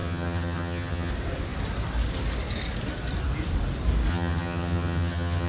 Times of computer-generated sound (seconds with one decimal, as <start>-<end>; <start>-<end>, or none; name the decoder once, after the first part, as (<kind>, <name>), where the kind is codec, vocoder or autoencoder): 0.0-1.1 (vocoder, HiFi-GAN); 4.1-5.5